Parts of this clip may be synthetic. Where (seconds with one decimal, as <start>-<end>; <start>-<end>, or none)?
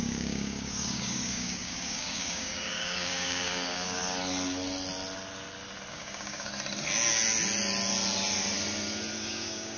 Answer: 0.0-4.0; 5.9-6.5; 9.3-9.8